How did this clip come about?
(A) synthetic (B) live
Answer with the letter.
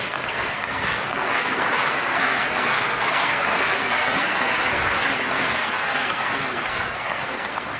A